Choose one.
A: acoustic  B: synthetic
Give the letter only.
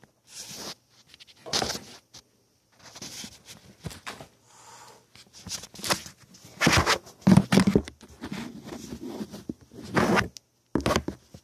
A